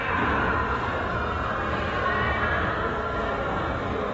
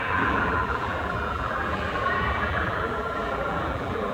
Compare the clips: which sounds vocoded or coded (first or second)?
second